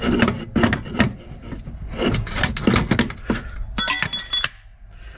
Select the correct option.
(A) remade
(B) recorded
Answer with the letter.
B